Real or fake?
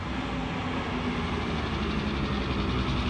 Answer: real